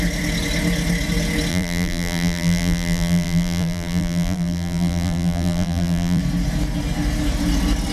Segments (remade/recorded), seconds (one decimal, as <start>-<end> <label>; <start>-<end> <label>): 0.0-1.5 recorded; 1.5-6.2 remade; 6.2-7.9 recorded